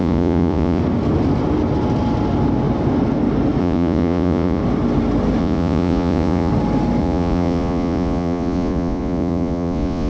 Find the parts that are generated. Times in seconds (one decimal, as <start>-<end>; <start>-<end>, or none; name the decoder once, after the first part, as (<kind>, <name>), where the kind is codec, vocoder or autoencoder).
0.0-0.8 (vocoder, Vocos); 3.6-4.6; 5.4-6.5; 7.0-10.1